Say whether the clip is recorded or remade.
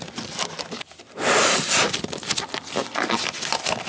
recorded